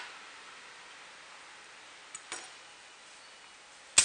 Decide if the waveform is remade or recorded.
recorded